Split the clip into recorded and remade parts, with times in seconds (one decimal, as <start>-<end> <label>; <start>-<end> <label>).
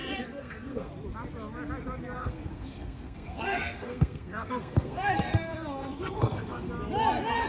0.0-0.9 remade; 0.9-2.2 recorded; 2.2-6.7 remade; 6.7-7.5 recorded